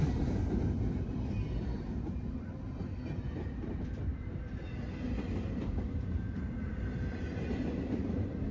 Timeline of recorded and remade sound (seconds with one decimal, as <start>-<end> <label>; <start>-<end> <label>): 0.0-8.5 recorded